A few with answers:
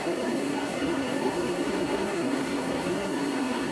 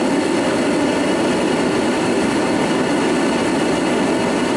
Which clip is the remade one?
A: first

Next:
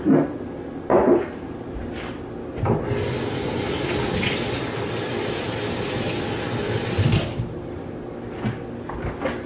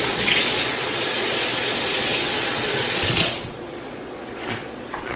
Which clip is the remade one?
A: second